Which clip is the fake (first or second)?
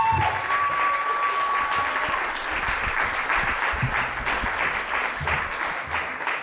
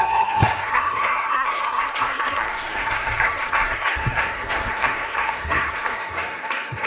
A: second